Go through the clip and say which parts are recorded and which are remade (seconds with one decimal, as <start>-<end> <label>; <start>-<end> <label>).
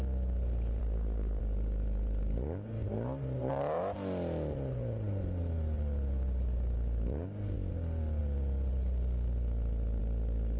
0.0-0.8 recorded; 0.8-1.4 remade; 1.4-10.6 recorded